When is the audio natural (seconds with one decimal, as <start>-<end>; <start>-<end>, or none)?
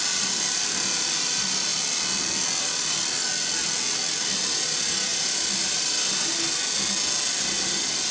0.0-8.1